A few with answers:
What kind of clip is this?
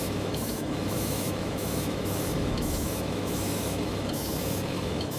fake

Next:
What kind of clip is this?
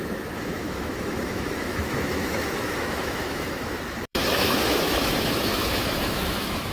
fake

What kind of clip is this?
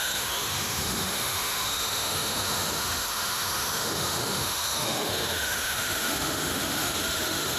fake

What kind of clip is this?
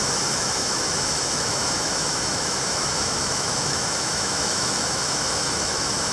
fake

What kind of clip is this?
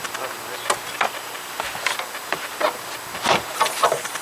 real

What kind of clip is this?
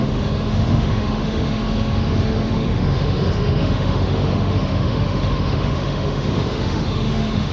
fake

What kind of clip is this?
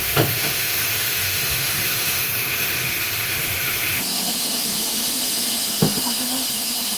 fake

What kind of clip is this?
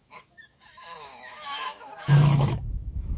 fake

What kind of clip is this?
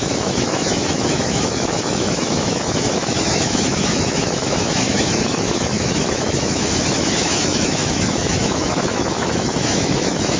fake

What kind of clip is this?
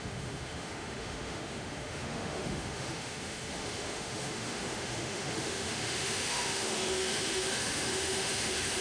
fake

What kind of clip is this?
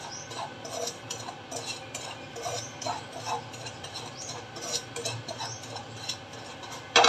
real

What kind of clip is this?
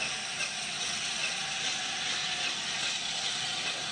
real